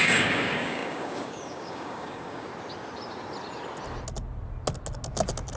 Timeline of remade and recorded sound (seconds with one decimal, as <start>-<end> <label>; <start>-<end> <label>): 0.0-2.5 remade; 2.5-5.6 recorded